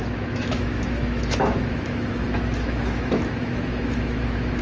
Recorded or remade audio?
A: remade